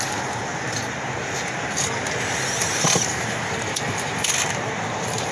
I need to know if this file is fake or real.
fake